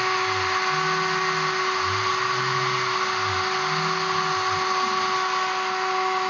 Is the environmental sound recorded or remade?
recorded